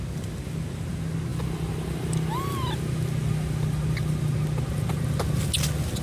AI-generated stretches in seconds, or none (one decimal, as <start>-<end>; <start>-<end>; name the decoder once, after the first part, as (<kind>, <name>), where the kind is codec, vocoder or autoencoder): none